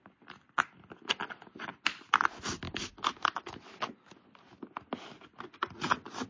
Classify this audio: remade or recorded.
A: recorded